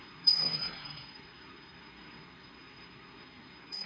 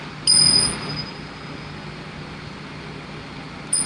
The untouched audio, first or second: second